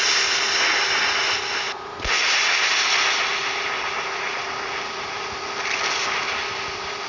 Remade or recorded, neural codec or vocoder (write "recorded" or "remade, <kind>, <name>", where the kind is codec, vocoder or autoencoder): recorded